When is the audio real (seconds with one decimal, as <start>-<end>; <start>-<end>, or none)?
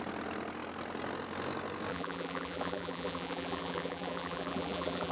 0.0-1.9